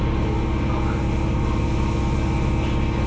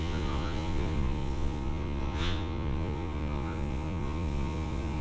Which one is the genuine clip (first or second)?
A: first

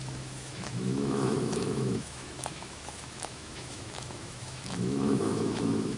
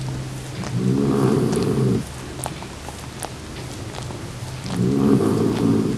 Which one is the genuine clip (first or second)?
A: second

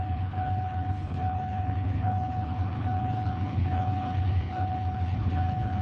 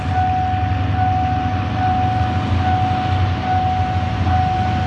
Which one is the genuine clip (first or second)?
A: second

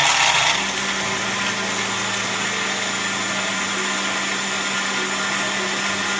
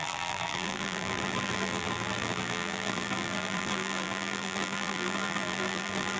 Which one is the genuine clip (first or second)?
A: first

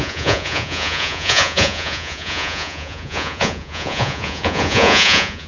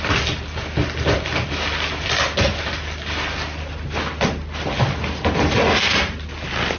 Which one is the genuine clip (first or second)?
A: second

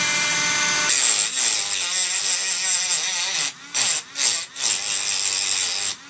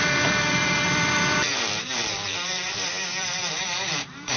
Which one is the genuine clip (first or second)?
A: first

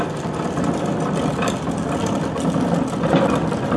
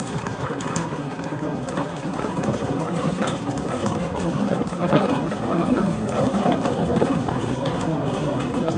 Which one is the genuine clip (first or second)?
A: first